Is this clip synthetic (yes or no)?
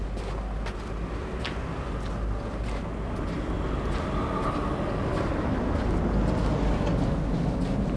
no